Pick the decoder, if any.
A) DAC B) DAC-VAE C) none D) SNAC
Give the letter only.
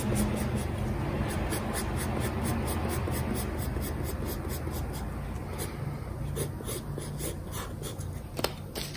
C